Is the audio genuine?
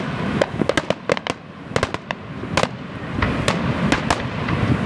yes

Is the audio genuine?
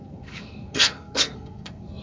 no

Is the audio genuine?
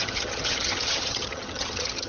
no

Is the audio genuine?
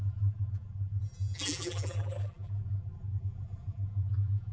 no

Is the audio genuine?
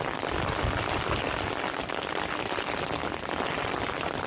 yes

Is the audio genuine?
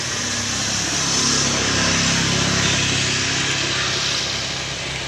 yes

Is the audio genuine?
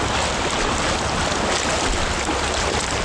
yes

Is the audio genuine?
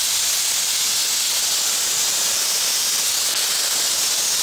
yes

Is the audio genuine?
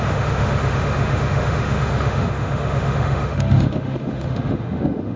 no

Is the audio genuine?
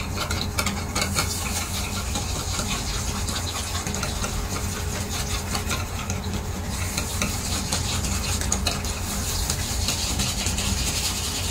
yes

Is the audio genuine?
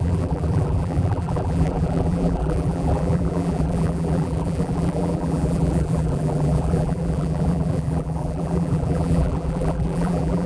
no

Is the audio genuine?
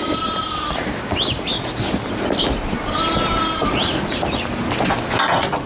yes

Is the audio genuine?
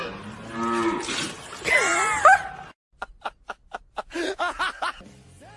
yes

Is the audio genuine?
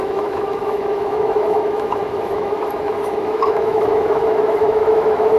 no